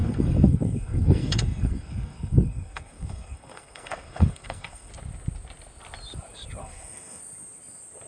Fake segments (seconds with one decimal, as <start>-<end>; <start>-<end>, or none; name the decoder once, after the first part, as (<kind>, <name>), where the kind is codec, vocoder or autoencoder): 0.0-4.9 (codec, SNAC); 6.6-7.2